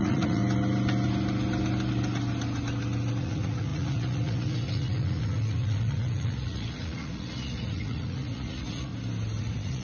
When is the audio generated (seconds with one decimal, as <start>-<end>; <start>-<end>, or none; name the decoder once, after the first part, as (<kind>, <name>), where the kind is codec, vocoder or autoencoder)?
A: 0.0-0.4 (vocoder, Vocos); 3.2-8.9; 9.4-9.8